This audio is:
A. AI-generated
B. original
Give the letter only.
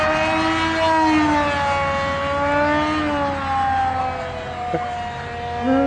B